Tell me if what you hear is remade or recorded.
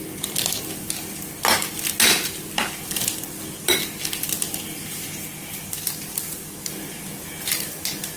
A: recorded